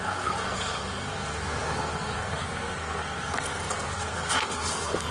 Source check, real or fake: fake